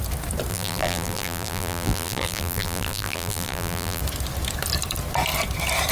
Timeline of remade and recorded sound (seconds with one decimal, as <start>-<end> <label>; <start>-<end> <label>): 0.0-0.5 recorded; 0.5-4.0 remade; 4.0-5.9 recorded